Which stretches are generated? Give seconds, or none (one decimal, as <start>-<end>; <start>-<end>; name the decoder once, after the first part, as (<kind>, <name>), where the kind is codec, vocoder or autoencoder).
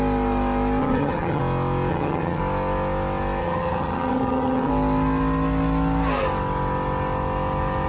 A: 0.8-1.4 (vocoder, HiFi-GAN); 1.9-2.4; 3.4-4.7